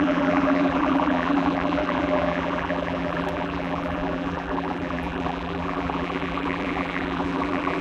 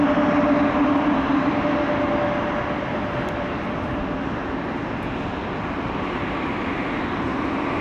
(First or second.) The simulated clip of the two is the first